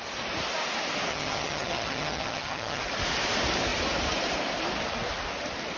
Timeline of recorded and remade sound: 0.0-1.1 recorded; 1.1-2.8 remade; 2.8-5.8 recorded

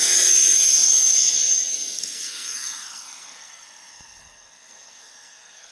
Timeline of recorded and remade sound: 0.0-5.7 remade

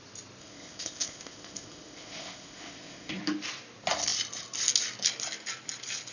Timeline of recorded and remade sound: 0.0-0.4 recorded; 0.4-3.2 remade; 3.2-6.1 recorded